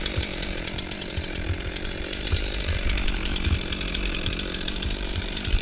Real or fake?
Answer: fake